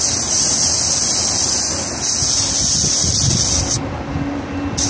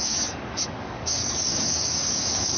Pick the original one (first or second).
first